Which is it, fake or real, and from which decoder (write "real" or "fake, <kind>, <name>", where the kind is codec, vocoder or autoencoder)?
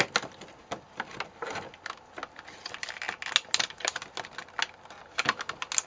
real